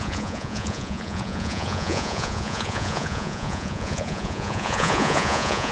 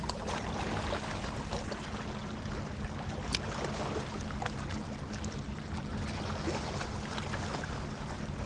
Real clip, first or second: second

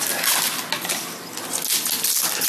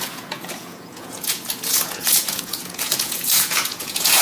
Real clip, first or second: first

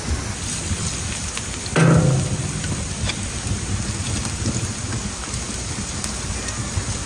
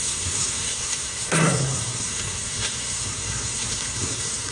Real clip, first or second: first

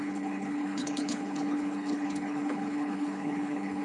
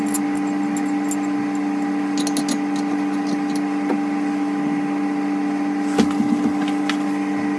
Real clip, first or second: second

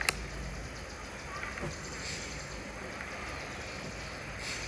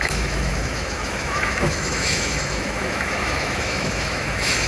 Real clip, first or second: first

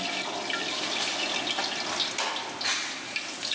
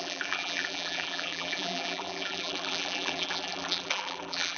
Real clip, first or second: first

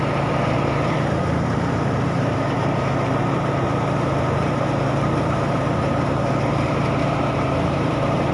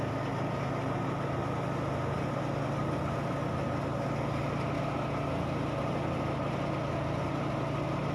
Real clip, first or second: second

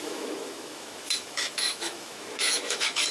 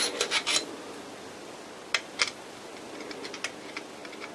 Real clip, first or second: second